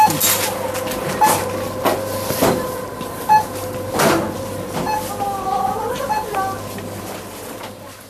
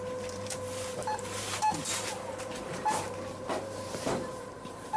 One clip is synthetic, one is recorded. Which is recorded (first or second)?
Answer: first